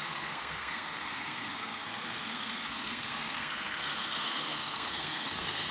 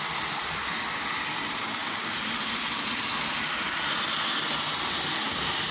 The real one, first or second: second